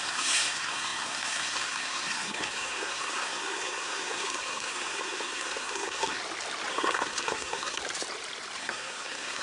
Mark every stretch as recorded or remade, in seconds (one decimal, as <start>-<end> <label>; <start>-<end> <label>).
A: 0.0-6.2 remade; 6.2-6.7 recorded; 6.7-7.8 remade; 7.8-8.6 recorded; 8.6-9.4 remade